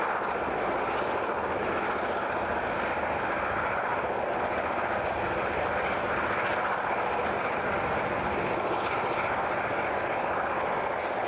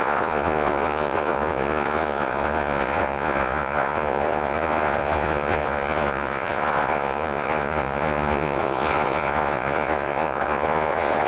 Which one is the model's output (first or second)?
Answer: second